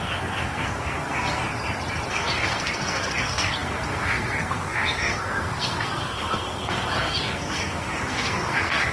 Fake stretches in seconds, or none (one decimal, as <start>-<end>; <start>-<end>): 0.0-1.4; 2.1-8.9